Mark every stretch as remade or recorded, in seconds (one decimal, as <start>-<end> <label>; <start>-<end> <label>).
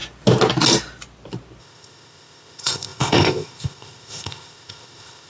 0.0-1.6 recorded; 1.6-5.3 remade